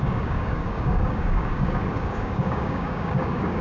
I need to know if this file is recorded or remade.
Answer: remade